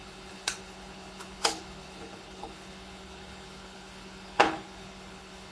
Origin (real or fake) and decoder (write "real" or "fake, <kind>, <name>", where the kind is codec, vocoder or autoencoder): fake, codec, HILCodec